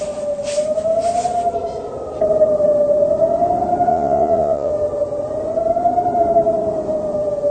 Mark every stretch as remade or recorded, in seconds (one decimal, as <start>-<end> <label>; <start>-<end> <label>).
0.0-3.9 recorded; 3.9-4.7 remade; 4.7-7.5 recorded